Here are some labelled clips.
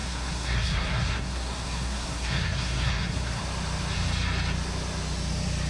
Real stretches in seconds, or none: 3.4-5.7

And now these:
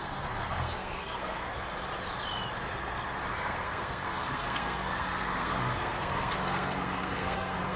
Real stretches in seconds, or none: 1.5-3.3

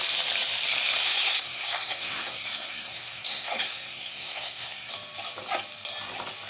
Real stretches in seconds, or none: 0.0-1.0; 4.9-6.5

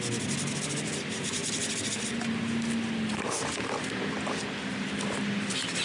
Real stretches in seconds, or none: 0.0-5.8

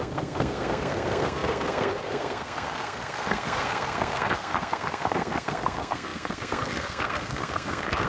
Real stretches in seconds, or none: none

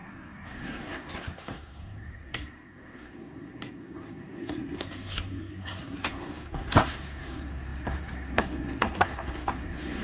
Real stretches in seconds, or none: none